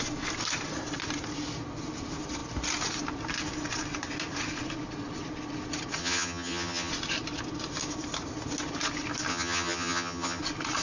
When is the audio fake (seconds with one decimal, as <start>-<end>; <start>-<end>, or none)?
6.0-6.9; 9.3-10.4